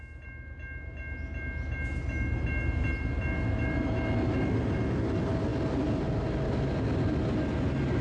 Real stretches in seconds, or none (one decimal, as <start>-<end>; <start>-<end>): 0.0-8.0